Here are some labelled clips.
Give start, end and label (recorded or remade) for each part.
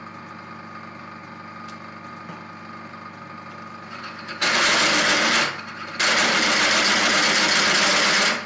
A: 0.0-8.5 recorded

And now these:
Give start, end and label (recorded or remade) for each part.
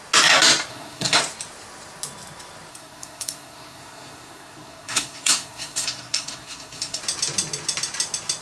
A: 0.0-0.7 recorded; 0.7-1.2 remade; 1.2-2.7 recorded; 2.7-7.0 remade; 7.0-8.4 recorded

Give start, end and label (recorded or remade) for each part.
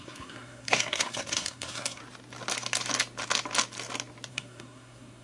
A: 0.0-2.0 remade; 2.0-4.3 recorded; 4.3-5.2 remade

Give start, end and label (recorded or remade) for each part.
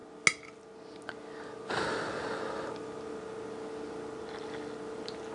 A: 0.0-5.3 recorded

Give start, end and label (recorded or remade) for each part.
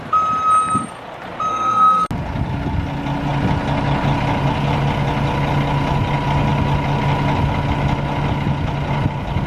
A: 0.0-1.5 recorded; 1.5-2.1 remade; 2.1-9.5 recorded